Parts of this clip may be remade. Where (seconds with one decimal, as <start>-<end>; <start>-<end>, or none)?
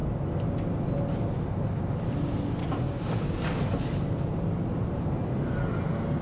2.6-3.2